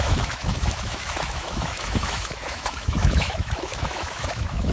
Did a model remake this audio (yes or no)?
yes